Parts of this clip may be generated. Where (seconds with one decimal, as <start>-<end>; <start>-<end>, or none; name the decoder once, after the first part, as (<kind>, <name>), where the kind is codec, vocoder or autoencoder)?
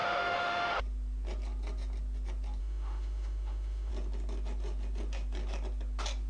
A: 0.0-0.8 (autoencoder, DAC-VAE); 2.6-3.9